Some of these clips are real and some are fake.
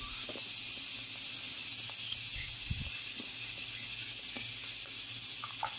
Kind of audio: real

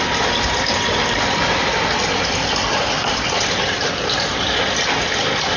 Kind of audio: real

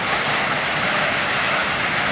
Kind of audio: real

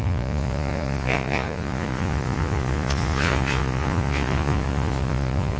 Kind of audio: fake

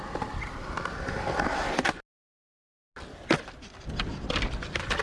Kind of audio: real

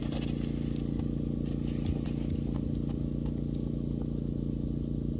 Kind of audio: real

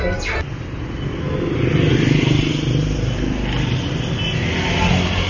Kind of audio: real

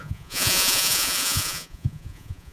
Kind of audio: fake